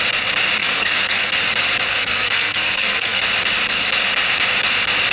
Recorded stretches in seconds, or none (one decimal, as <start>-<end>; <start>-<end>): 0.0-0.6; 1.3-2.0; 3.2-5.1

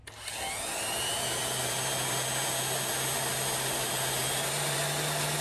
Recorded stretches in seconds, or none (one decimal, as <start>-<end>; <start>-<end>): 0.0-5.4

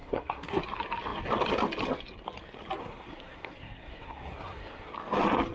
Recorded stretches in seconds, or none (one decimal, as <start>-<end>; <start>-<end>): 0.6-2.8; 4.9-5.5

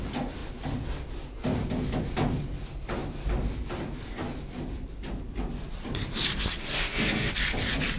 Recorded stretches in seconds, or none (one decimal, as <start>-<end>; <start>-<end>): 0.0-6.6; 7.3-8.0

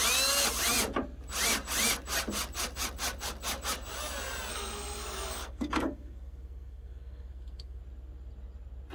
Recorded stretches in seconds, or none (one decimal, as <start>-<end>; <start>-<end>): 0.0-4.5; 7.8-8.9

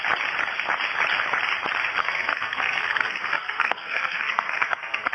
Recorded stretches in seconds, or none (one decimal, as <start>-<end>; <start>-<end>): 0.0-2.0

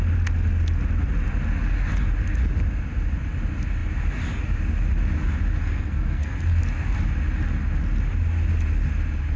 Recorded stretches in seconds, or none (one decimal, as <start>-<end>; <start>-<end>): 0.0-5.6; 6.6-9.4